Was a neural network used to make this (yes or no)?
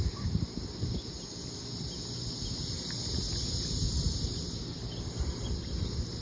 no